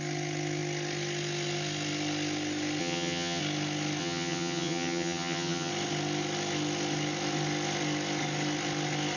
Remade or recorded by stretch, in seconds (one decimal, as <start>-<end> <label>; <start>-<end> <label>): 0.0-2.8 recorded; 2.8-3.4 remade; 3.4-4.0 recorded; 4.0-5.7 remade; 5.7-9.2 recorded